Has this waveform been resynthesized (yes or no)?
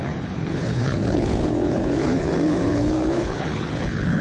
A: yes